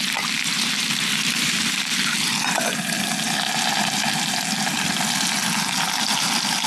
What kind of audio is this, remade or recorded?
recorded